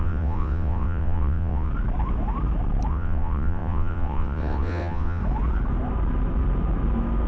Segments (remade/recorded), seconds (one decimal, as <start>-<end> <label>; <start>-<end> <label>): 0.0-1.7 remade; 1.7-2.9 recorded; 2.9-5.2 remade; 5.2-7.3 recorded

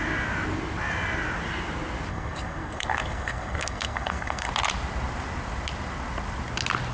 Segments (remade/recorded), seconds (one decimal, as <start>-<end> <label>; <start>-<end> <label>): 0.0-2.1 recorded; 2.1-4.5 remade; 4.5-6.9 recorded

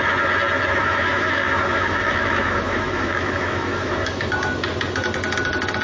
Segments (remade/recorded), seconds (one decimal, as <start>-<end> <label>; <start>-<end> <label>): 0.0-0.8 recorded; 0.8-4.3 remade; 4.3-5.8 recorded

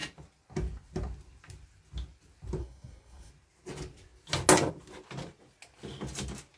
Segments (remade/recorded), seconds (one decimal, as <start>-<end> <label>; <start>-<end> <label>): 0.0-2.6 recorded; 2.6-3.3 remade; 3.3-6.6 recorded

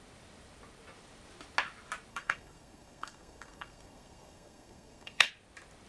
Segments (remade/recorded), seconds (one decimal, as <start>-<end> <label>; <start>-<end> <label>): 0.0-2.1 recorded; 2.1-5.3 remade; 5.3-5.9 recorded

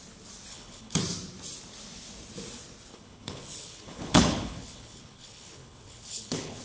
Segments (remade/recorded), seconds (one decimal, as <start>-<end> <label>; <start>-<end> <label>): 0.0-0.5 recorded; 0.5-1.0 remade; 1.0-2.9 recorded; 2.9-6.6 remade